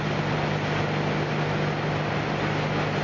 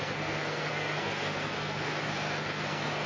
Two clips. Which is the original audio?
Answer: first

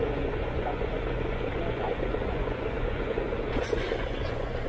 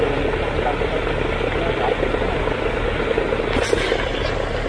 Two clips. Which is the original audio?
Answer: second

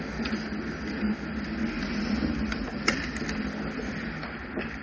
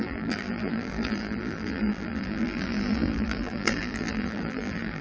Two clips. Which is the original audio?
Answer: first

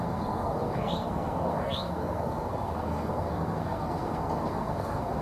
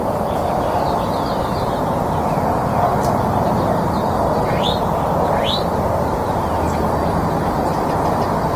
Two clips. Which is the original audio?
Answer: second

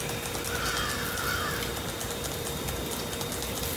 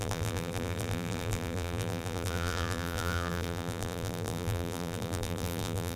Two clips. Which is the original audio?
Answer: first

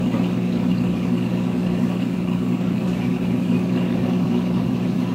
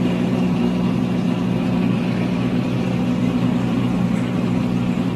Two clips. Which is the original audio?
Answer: second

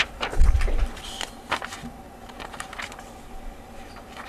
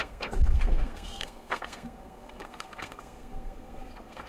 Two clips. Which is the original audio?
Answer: first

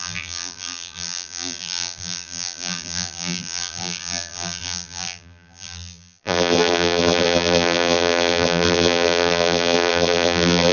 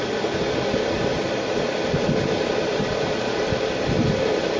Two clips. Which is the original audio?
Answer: second